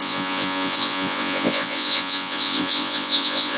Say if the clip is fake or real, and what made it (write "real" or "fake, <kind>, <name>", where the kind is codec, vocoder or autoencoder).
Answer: fake, vocoder, Vocos